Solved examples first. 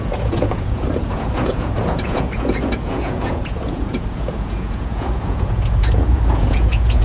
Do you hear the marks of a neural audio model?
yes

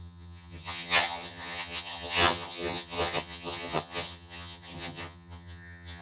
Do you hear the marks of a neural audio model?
yes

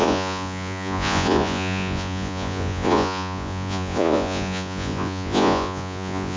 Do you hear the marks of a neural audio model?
yes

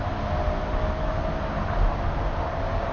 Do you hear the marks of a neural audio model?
no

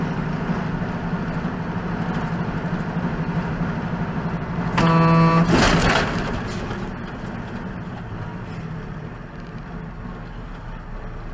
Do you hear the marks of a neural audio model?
no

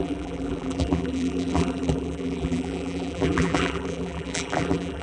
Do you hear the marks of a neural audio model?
yes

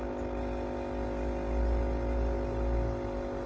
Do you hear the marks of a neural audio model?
no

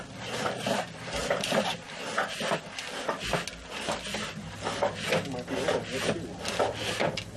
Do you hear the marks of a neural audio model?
no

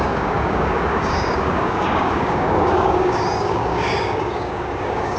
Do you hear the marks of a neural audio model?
yes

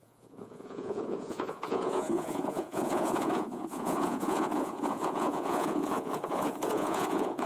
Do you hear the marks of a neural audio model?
yes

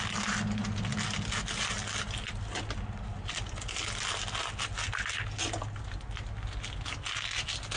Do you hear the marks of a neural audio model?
no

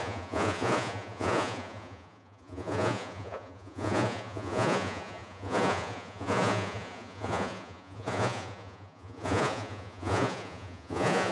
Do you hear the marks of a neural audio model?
yes